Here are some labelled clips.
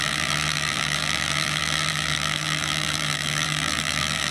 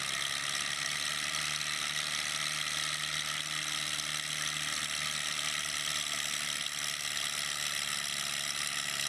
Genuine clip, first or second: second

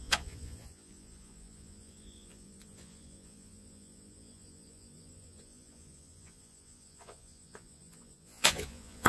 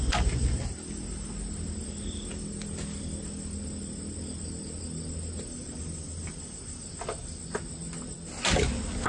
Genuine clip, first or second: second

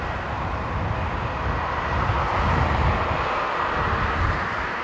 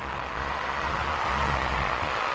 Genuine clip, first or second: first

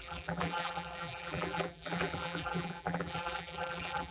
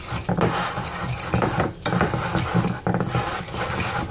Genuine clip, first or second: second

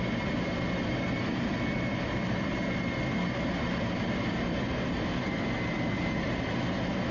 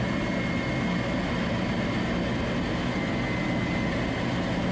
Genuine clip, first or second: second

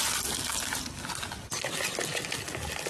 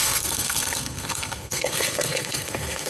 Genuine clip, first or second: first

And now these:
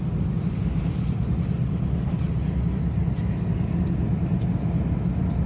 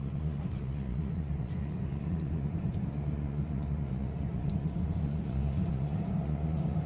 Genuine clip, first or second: first